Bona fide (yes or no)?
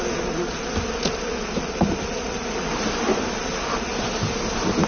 yes